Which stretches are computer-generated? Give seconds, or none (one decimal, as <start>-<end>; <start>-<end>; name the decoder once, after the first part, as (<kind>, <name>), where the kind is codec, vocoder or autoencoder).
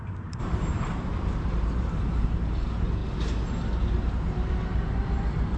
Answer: 0.0-3.0 (vocoder, BigVGAN v2); 3.8-5.6